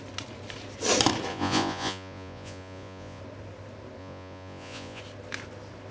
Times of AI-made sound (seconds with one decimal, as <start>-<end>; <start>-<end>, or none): 1.3-3.2; 4.0-5.0